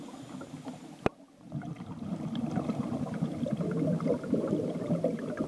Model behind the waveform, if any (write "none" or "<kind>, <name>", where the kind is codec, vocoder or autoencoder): none